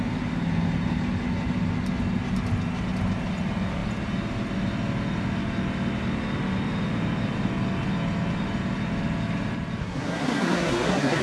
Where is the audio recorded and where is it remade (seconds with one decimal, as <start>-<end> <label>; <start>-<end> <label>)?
0.0-9.8 recorded; 9.8-11.2 remade